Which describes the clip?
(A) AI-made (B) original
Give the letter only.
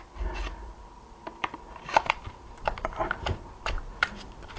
A